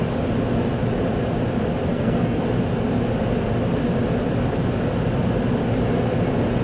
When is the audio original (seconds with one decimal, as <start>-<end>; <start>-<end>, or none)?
0.0-1.9; 2.4-6.6